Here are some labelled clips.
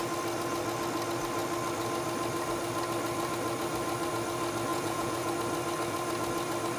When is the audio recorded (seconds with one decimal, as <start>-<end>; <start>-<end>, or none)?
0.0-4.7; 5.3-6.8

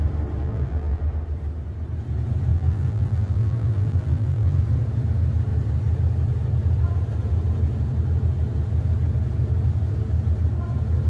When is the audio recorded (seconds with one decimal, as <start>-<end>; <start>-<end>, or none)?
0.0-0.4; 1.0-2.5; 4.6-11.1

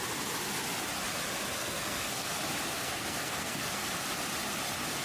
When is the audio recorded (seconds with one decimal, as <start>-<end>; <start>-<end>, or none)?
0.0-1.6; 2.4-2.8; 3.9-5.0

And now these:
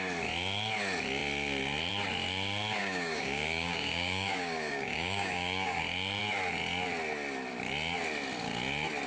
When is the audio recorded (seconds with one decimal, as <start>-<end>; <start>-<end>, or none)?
0.0-2.8; 5.8-9.1